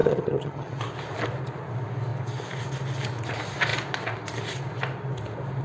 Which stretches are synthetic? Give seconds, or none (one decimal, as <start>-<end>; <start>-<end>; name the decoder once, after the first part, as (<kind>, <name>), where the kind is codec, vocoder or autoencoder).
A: 0.0-0.8 (vocoder, HiFi-GAN)